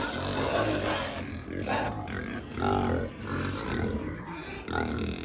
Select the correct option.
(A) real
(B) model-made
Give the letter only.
A